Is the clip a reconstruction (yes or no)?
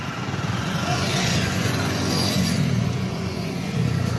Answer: yes